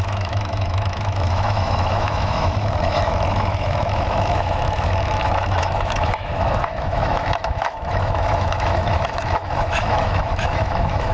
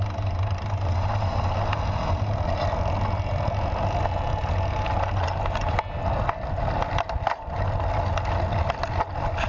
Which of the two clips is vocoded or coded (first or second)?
first